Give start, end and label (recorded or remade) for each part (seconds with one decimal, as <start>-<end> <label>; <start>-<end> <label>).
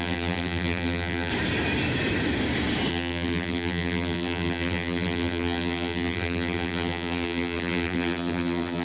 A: 0.0-1.3 remade; 1.3-2.9 recorded; 2.9-8.8 remade